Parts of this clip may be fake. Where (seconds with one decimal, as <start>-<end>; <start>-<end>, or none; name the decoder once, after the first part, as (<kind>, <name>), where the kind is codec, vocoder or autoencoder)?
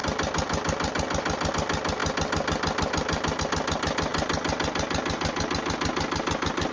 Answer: none